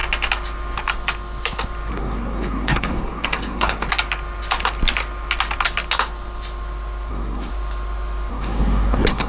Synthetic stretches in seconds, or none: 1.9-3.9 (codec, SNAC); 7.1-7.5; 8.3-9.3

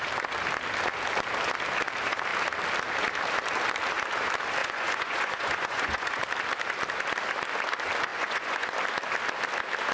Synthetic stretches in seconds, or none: 4.6-6.2 (vocoder, Vocos); 8.1-8.7